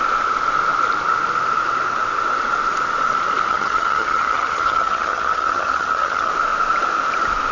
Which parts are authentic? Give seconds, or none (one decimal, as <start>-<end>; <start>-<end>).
0.0-3.5; 6.3-7.5